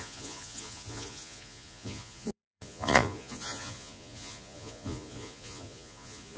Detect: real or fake fake